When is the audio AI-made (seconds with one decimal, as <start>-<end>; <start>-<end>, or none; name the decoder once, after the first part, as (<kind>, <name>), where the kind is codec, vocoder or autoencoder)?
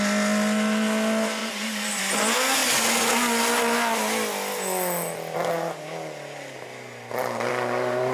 1.4-2.0 (vocoder, BigVGAN v2)